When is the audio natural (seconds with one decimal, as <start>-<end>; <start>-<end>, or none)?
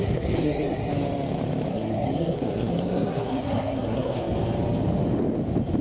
0.9-1.7; 4.2-5.8